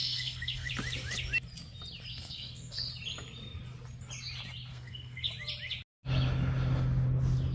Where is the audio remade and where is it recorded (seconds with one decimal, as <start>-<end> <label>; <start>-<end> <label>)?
0.0-0.7 remade; 0.7-2.1 recorded; 2.1-2.9 remade; 2.9-4.7 recorded; 4.7-5.3 remade; 5.3-7.5 recorded